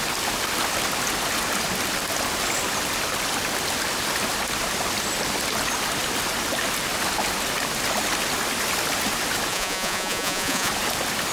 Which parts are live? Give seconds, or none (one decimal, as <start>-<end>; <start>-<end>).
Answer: 0.0-9.5; 10.7-11.3